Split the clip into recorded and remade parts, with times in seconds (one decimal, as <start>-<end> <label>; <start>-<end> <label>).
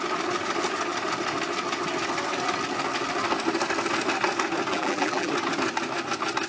0.0-4.7 recorded; 4.7-5.3 remade; 5.3-6.5 recorded